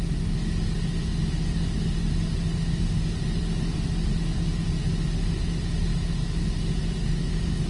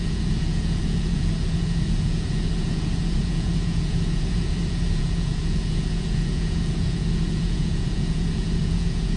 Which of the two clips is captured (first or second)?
first